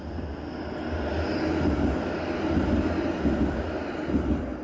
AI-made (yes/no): no